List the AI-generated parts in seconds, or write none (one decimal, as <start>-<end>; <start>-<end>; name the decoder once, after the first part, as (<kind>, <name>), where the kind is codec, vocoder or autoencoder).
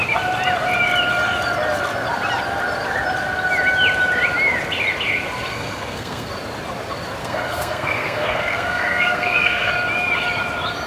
5.5-6.3 (codec, SNAC); 7.2-9.7